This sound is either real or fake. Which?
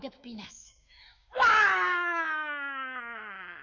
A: fake